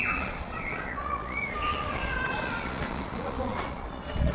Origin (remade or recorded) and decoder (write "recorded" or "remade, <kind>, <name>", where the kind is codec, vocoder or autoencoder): remade, vocoder, Vocos